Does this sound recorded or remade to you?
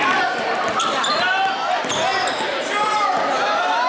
recorded